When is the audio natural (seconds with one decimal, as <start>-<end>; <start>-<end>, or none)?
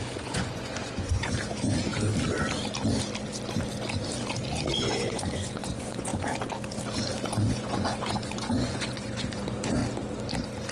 1.9-4.7; 6.1-7.2; 9.8-10.7